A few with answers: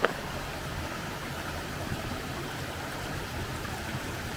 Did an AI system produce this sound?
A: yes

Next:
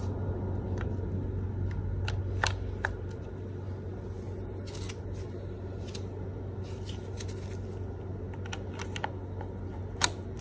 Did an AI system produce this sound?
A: no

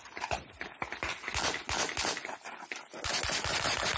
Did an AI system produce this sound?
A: no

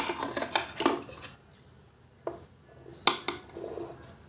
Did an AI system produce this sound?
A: no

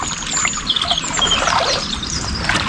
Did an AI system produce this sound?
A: no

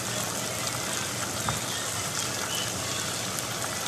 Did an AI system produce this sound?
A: no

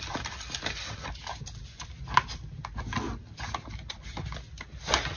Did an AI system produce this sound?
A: no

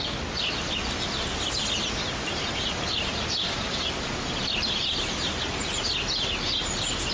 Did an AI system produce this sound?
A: no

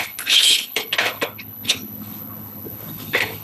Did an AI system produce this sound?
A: yes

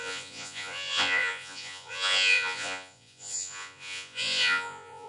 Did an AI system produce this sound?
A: yes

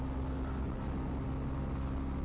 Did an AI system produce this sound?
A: no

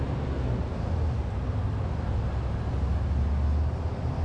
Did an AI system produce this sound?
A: no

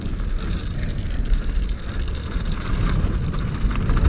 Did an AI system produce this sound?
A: no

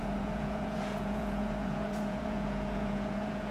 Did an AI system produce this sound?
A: yes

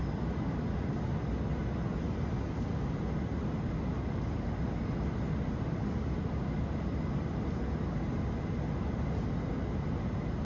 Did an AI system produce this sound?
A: no